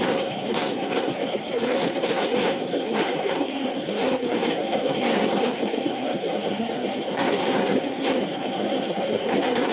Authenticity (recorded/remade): remade